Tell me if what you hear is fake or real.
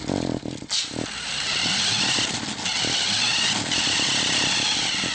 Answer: real